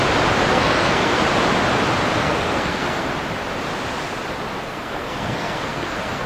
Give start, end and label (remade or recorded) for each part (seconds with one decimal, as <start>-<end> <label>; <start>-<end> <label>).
0.0-0.5 recorded; 0.5-1.2 remade; 1.2-2.2 recorded; 2.2-3.1 remade; 3.1-4.6 recorded; 4.6-6.3 remade